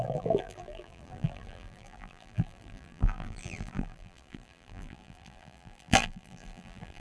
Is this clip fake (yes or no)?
yes